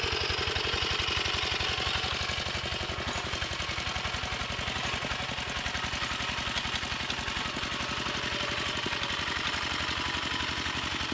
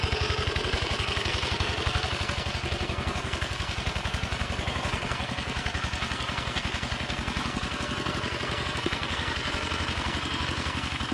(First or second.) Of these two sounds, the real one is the first